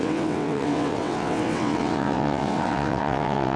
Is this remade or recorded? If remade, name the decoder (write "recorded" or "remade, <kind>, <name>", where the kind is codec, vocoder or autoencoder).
remade, vocoder, WaveNeXt